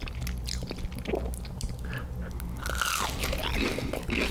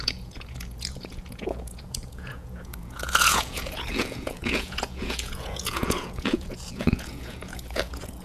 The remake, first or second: second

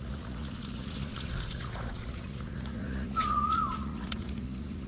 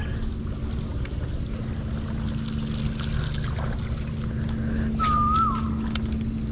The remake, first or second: first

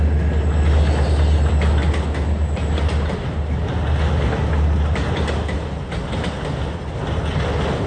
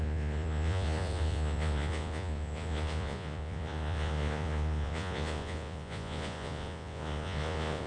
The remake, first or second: second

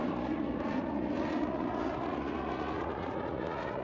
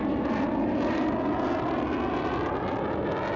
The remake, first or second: first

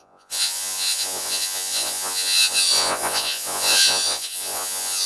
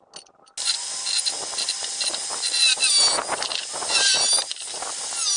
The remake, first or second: first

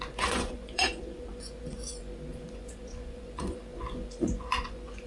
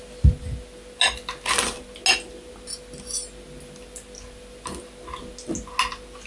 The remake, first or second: first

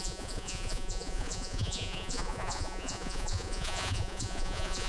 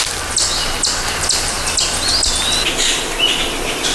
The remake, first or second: first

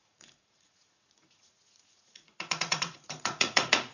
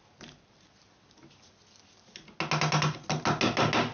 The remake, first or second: first